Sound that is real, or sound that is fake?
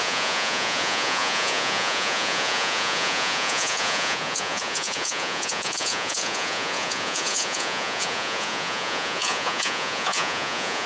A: fake